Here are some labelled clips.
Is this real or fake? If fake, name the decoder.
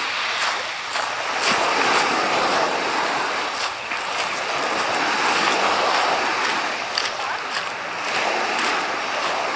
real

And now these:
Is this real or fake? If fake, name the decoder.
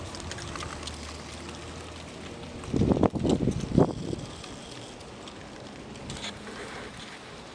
real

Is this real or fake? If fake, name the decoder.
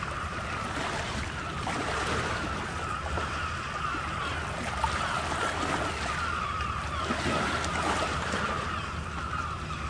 real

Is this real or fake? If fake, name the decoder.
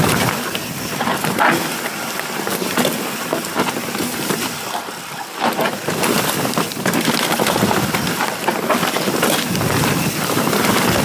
real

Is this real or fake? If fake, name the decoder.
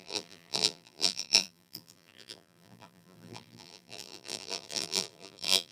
fake, vocoder, BigVGAN v2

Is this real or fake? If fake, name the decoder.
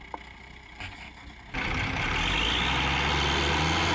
real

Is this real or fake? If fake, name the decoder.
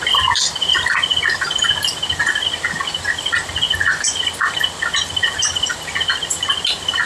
real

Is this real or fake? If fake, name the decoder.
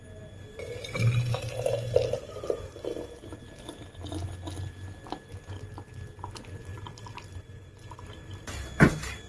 real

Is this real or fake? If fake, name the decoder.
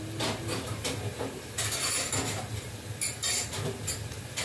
real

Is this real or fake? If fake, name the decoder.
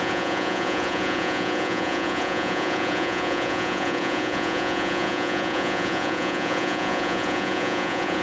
fake, vocoder, Vocos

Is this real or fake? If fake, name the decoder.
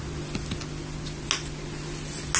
real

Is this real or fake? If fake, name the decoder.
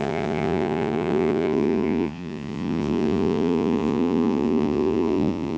fake, vocoder, Vocos